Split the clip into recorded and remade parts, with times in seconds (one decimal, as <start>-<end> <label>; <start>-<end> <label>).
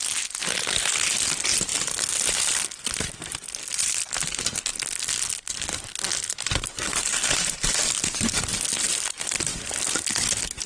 0.0-10.7 recorded